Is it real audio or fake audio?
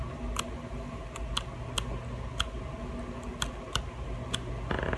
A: real